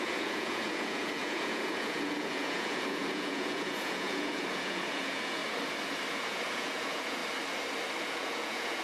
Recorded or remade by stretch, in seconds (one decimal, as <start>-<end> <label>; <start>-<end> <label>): 0.0-5.4 remade; 5.4-6.1 recorded; 6.1-7.2 remade; 7.2-8.0 recorded; 8.0-8.8 remade